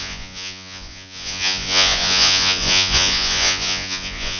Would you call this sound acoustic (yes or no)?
no